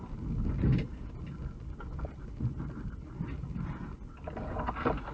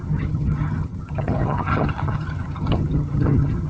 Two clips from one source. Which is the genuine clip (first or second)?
first